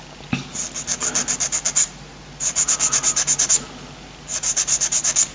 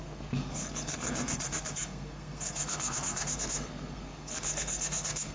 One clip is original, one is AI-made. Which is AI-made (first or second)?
second